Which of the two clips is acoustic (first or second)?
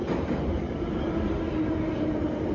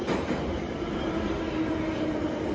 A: second